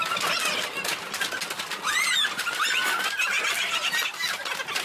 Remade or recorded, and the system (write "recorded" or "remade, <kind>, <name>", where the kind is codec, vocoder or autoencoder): recorded